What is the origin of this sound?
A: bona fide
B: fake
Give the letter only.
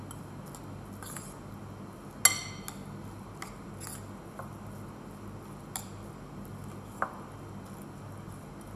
A